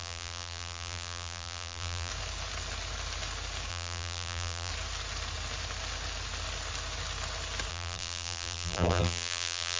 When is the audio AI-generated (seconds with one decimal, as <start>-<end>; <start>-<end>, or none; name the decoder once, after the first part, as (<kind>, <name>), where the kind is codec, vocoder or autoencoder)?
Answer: 0.0-2.1 (vocoder, BigVGAN v2); 3.7-4.7; 7.7-9.8